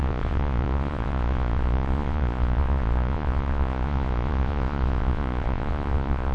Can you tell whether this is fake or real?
fake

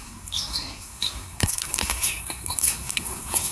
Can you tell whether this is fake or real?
fake